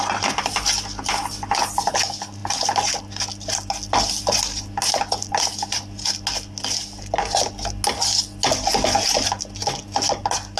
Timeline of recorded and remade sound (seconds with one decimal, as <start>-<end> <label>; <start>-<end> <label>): 0.0-2.4 recorded; 2.4-3.0 remade; 3.0-10.6 recorded